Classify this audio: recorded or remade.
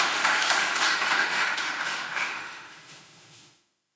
remade